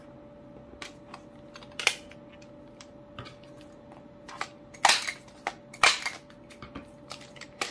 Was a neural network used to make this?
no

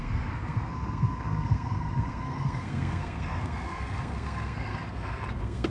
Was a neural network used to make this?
yes